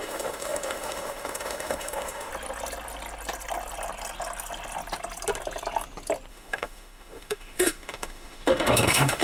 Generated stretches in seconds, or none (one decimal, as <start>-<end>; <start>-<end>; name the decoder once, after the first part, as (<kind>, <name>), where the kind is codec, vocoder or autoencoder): 0.0-2.3 (autoencoder, DAC-VAE); 6.3-9.2